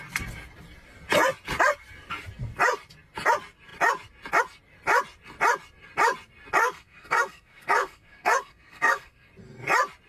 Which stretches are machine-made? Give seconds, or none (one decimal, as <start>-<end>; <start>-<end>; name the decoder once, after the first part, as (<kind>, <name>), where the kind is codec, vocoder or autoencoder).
6.6-9.3 (codec, SNAC)